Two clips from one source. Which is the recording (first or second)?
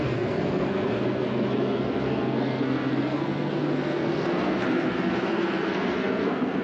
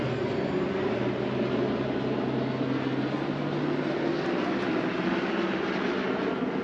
second